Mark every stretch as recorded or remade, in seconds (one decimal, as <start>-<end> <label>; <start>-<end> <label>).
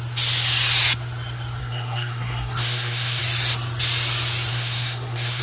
0.0-1.6 recorded; 1.6-3.2 remade; 3.2-4.5 recorded; 4.5-5.4 remade